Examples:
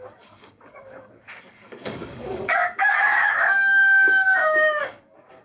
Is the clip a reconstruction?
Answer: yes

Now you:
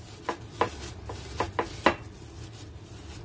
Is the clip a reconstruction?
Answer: no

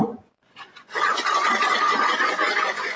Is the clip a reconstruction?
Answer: yes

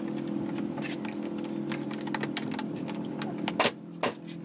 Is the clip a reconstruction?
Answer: no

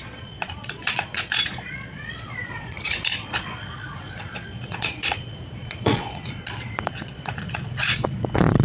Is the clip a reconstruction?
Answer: yes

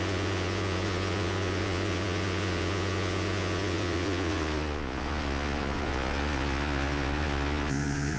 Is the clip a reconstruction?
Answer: yes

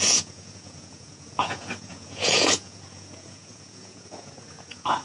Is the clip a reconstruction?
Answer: yes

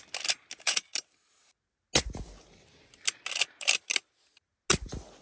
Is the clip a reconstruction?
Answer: no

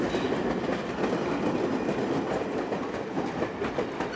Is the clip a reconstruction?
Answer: no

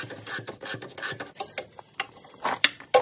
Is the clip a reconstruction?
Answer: no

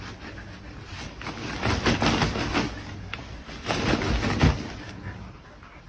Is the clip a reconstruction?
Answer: no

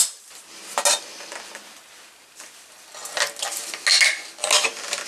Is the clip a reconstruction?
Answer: no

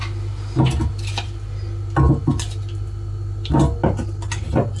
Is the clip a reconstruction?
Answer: no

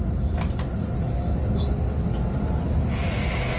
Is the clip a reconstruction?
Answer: no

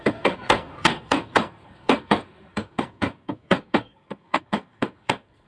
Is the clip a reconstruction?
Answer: yes